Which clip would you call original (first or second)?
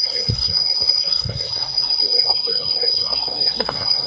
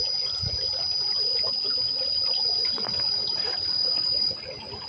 second